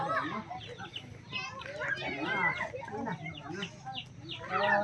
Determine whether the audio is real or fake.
real